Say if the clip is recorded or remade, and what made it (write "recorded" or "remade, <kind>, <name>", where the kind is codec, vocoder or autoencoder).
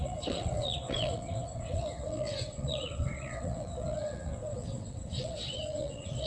remade, vocoder, WaveNeXt